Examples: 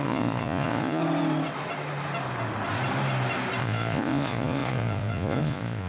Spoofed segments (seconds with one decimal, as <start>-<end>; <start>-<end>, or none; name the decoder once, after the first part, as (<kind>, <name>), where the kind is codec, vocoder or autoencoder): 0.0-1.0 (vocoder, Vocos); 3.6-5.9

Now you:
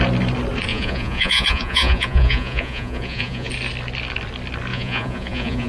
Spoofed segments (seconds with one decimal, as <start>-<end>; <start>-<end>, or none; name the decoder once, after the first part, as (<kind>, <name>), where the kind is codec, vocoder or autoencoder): 0.7-3.5 (vocoder, Vocos); 4.7-5.7

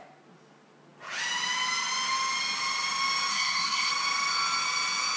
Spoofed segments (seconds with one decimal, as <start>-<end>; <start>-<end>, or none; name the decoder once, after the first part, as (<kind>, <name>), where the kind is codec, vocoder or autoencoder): 3.3-3.9 (codec, SNAC)

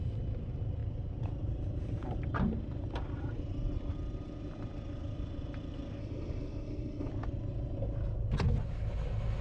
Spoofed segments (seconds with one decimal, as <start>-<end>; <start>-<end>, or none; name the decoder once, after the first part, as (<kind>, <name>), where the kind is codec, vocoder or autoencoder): 6.0-7.1 (codec, SNAC)

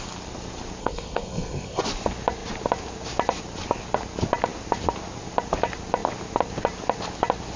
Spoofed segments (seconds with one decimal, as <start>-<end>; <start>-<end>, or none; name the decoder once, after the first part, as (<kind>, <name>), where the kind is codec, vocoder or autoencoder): 0.8-1.8 (codec, SNAC)

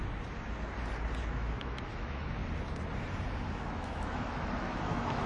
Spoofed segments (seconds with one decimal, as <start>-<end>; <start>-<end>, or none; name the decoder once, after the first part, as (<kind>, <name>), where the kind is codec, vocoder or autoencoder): 1.2-2.4 (autoencoder, DAC-VAE); 3.4-5.3